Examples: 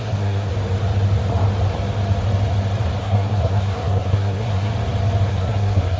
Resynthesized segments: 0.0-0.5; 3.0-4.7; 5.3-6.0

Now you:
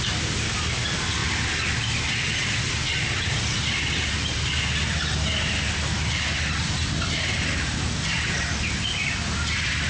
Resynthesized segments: none

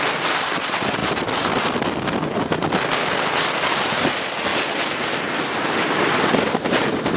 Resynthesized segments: none

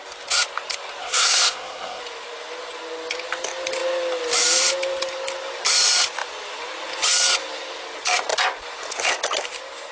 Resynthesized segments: 1.0-2.0

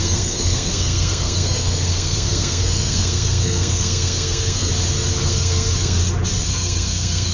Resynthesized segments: 0.0-4.7; 5.2-6.0; 6.5-7.3

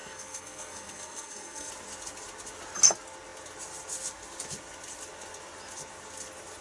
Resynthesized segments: 0.0-1.7

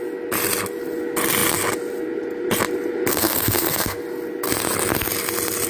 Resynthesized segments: 3.1-4.0